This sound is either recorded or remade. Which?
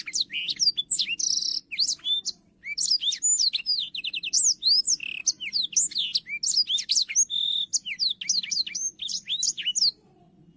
recorded